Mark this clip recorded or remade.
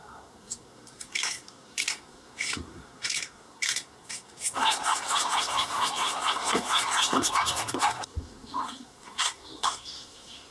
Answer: remade